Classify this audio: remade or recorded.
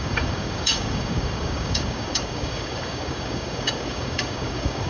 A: remade